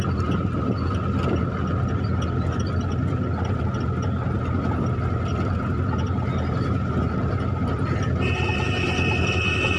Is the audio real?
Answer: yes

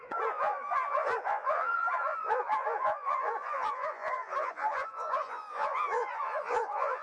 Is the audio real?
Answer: no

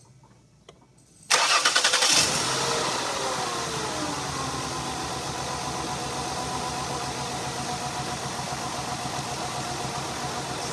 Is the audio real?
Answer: yes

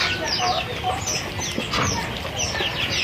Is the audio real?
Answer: yes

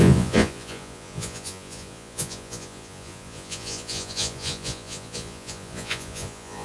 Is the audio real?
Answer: no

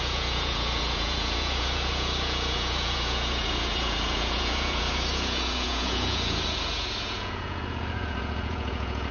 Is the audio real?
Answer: no